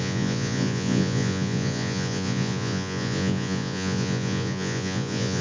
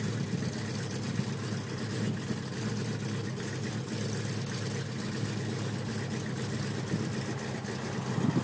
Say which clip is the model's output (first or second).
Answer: first